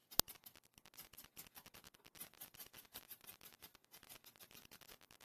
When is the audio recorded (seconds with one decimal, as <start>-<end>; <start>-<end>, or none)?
0.0-3.0; 3.8-4.4